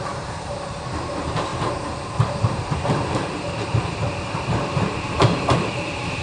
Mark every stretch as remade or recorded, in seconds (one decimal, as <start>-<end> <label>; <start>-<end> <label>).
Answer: 0.0-1.5 remade; 1.5-2.6 recorded; 2.6-3.2 remade; 3.2-4.4 recorded; 4.4-6.2 remade